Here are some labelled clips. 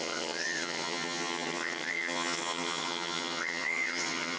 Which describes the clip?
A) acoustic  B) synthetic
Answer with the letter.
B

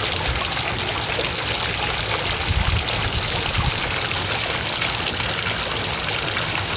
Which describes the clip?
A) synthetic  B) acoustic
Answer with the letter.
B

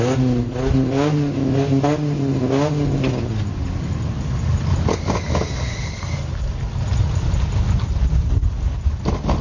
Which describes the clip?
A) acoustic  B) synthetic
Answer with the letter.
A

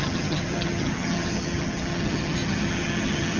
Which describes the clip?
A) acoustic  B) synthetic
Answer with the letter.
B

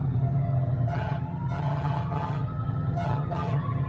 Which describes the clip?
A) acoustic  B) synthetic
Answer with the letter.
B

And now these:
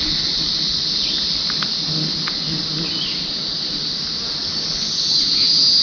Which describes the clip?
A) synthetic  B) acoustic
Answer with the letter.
B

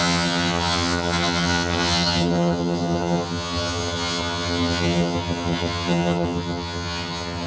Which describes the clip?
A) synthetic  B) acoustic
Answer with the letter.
A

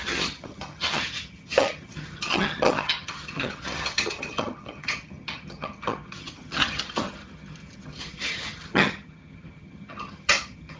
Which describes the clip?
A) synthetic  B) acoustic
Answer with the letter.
A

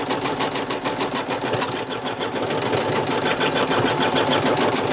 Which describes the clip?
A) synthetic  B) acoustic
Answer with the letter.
B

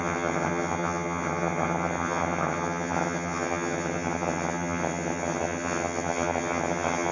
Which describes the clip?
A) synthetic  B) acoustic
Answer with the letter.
A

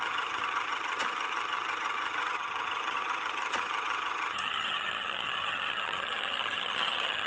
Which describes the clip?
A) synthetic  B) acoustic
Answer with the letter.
A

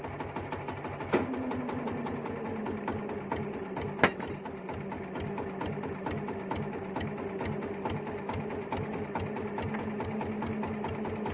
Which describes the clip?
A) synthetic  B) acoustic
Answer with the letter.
B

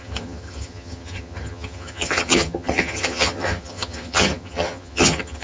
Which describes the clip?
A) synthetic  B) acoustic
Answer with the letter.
A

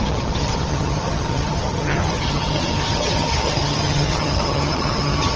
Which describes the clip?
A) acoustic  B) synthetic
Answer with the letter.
B